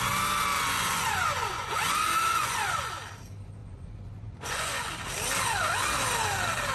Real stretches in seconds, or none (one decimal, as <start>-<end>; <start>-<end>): 0.0-0.5; 2.9-3.6; 4.9-6.7